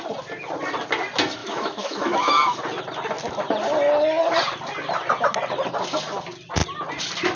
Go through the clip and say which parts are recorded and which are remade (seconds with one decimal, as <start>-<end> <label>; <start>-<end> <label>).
0.0-1.4 recorded; 1.4-2.6 remade; 2.6-7.4 recorded